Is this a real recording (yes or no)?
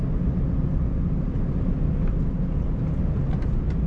yes